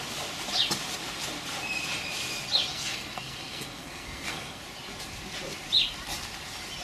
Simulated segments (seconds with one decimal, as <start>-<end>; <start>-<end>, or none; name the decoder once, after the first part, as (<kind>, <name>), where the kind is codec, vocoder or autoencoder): 2.7-4.6 (codec, SNAC)